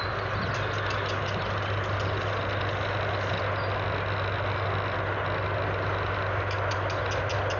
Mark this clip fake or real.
real